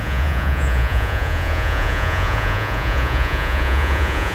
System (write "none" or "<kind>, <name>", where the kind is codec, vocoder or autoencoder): vocoder, Vocos